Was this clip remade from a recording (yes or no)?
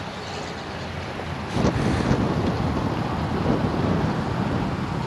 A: no